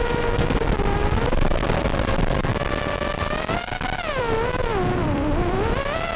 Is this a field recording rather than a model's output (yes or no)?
no